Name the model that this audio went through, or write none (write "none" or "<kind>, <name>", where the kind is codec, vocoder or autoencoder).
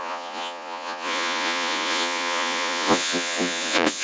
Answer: vocoder, Vocos